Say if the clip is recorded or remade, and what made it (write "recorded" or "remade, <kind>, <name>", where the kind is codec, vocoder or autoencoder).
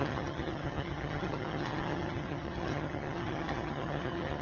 remade, vocoder, HiFi-GAN